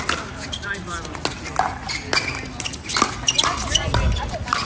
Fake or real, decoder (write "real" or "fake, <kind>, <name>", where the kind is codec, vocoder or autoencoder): real